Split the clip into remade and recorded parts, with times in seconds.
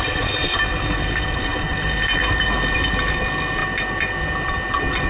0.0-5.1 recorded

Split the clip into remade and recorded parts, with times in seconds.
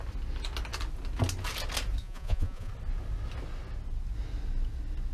0.0-2.0 recorded; 2.0-2.7 remade; 2.7-5.1 recorded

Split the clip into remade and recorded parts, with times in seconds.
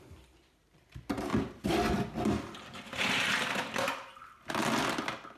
0.0-5.4 recorded